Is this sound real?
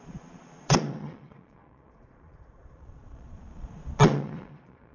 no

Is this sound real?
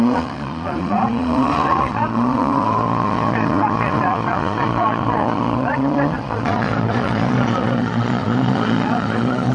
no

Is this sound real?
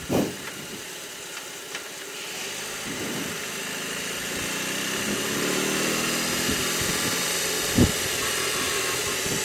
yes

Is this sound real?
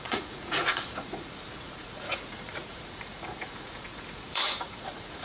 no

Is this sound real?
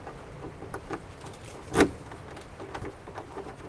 yes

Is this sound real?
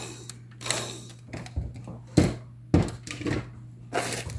yes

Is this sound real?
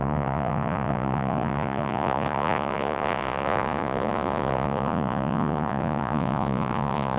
no